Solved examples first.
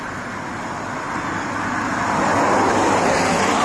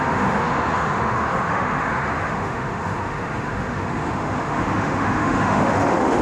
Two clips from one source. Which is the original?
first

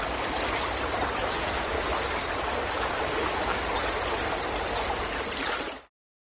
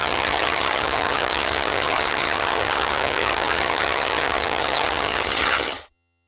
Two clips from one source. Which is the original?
first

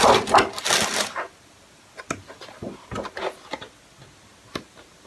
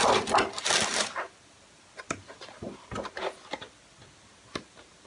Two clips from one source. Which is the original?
first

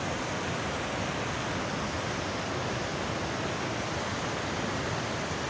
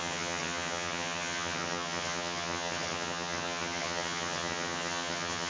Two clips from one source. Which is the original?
first